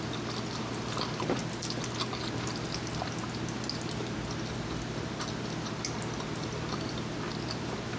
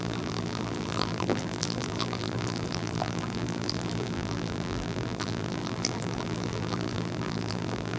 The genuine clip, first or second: first